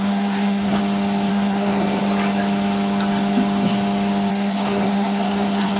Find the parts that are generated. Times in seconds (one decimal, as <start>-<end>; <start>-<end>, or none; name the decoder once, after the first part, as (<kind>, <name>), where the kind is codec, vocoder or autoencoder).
0.0-0.8 (codec, SNAC); 1.3-2.0; 4.3-5.8